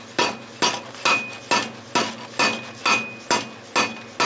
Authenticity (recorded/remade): recorded